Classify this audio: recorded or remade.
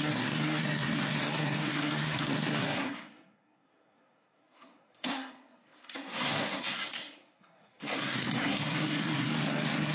remade